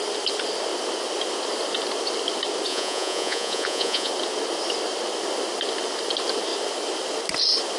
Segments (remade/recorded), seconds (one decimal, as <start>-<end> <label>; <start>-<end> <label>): 0.0-2.7 recorded; 2.7-4.1 remade; 4.1-7.8 recorded